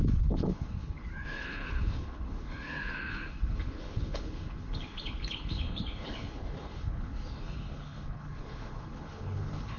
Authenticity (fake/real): fake